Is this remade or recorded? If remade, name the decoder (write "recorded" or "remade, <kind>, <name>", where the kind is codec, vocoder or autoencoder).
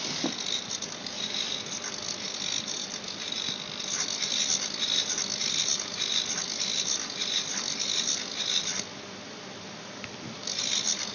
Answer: recorded